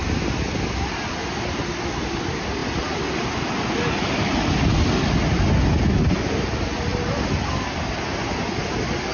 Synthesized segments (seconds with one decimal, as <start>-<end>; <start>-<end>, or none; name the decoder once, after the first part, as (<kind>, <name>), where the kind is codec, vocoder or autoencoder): none